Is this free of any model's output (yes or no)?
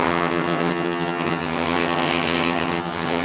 no